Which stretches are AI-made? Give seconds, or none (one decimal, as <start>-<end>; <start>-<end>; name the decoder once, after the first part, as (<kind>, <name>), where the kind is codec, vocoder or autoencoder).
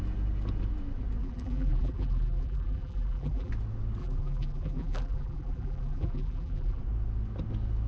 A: 1.2-3.5 (vocoder, BigVGAN v2); 4.0-6.8